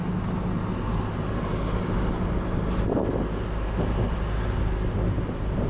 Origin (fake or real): real